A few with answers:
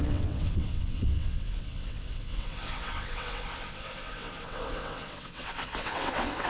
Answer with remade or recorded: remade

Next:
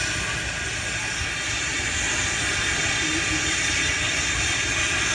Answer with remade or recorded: recorded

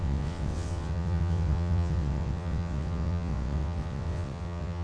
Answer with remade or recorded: remade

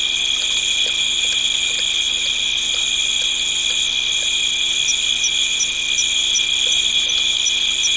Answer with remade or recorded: recorded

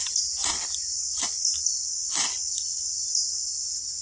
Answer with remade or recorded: recorded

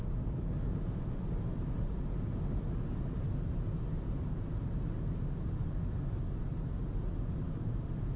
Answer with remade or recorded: recorded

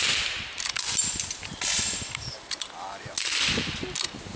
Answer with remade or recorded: recorded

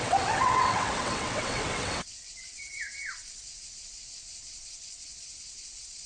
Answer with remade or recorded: remade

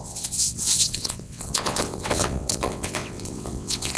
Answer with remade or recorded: remade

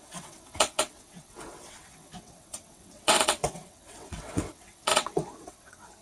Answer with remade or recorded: remade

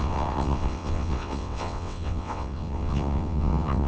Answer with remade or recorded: remade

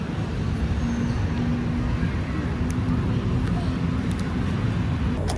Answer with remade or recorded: recorded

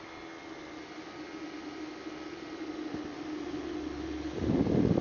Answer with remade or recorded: recorded